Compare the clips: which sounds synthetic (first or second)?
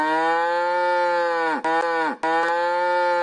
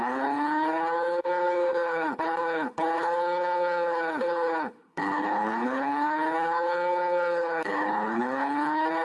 second